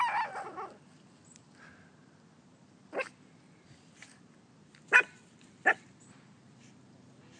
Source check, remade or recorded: recorded